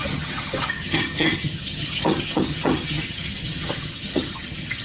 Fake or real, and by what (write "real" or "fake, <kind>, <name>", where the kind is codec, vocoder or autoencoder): fake, vocoder, HiFi-GAN